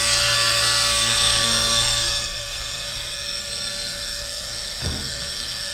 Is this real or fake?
fake